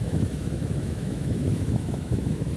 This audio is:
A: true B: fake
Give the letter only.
B